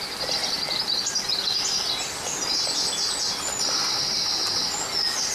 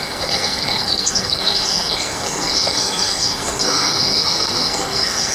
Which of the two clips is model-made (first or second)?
second